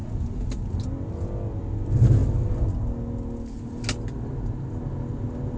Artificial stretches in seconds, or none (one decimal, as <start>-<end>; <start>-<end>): none